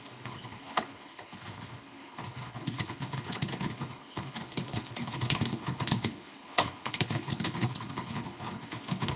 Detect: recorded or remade remade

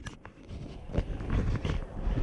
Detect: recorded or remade recorded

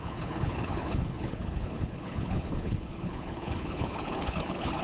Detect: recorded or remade remade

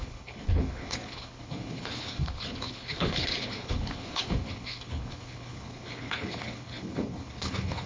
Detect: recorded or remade remade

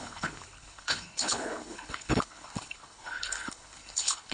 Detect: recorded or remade remade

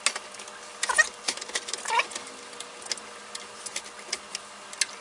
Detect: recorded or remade recorded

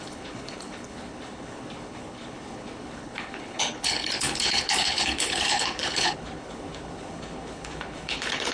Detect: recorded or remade remade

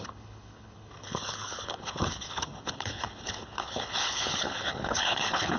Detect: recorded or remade remade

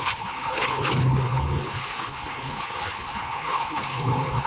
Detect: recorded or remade remade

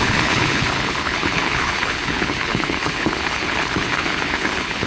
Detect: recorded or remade remade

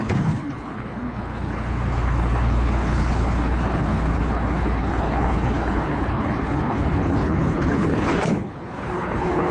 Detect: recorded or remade remade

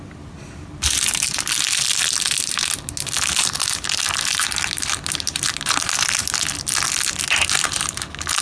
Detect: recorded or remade recorded